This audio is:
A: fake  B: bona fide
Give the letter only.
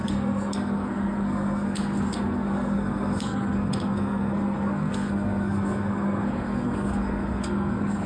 A